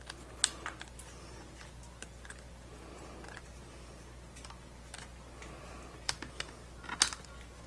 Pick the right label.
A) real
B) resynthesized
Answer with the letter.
A